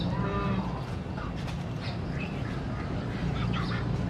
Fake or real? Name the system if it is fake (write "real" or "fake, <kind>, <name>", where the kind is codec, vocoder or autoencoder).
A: real